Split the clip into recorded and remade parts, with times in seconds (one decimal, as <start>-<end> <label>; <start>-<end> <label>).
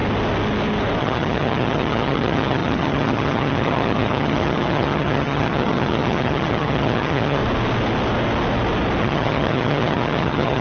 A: 0.0-1.0 recorded; 1.0-7.4 remade; 7.4-9.0 recorded; 9.0-10.6 remade